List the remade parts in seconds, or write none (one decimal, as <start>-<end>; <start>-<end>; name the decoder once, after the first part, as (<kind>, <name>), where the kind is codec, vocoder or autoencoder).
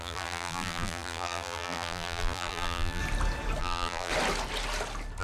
0.0-3.0 (vocoder, BigVGAN v2); 3.6-4.1